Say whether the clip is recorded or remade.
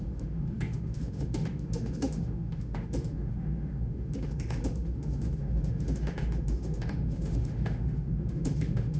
remade